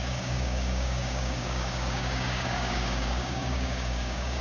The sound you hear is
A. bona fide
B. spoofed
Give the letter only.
B